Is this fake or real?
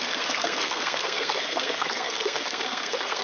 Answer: fake